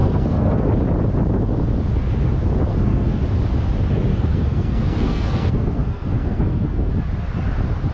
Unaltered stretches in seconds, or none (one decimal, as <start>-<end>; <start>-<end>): 0.7-2.7; 3.2-4.1; 6.9-7.9

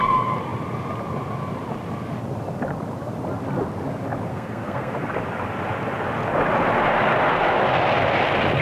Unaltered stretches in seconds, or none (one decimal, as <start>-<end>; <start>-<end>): 0.0-4.3; 4.9-8.6

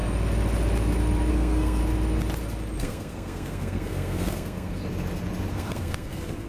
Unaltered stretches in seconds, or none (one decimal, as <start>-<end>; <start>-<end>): 0.0-1.3; 1.8-2.8; 4.8-5.5

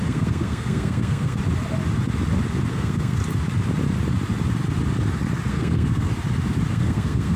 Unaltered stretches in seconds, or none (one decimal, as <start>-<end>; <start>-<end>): 1.4-2.7; 3.2-5.5; 6.1-6.7

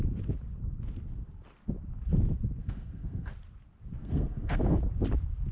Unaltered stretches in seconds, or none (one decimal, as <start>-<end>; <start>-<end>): 0.0-2.6; 3.3-4.0; 4.8-5.5

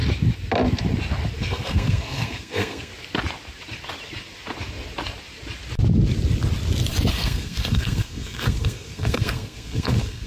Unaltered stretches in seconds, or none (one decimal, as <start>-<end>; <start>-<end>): 0.0-1.4; 2.9-7.1

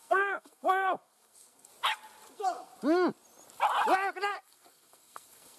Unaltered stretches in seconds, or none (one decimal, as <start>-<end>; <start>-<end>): 1.7-2.3; 2.7-4.3

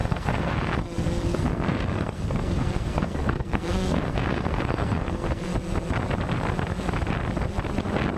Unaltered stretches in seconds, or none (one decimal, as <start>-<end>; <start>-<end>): 5.5-8.2